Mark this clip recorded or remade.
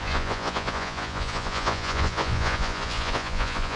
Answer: remade